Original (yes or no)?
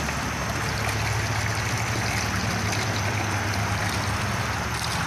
yes